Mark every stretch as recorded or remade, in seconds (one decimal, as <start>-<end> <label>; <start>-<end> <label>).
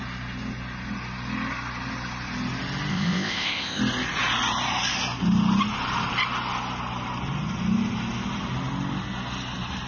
0.0-2.9 recorded; 2.9-3.8 remade; 3.8-9.9 recorded